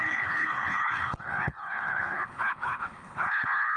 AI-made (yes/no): yes